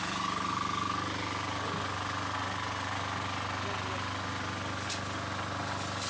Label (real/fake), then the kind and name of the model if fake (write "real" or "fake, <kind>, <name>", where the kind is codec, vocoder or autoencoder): real